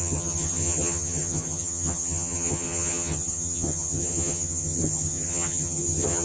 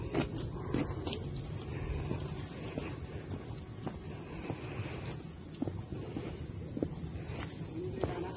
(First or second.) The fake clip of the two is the first